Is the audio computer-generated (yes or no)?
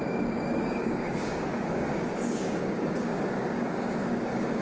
yes